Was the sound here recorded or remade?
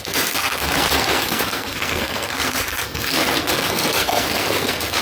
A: remade